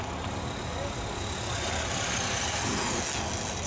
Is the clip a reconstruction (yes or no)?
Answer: no